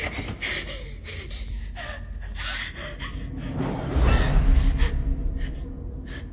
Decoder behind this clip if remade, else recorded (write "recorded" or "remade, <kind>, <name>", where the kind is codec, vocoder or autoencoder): recorded